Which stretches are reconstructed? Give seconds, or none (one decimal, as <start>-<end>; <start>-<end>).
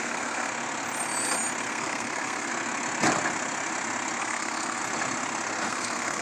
0.0-0.5; 1.6-2.5; 4.2-4.8; 5.7-6.2